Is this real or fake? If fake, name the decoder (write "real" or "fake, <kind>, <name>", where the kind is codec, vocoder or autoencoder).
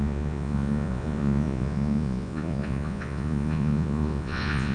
fake, vocoder, Vocos